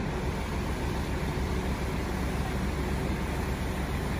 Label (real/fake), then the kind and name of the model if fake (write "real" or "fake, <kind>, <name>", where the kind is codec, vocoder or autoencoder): real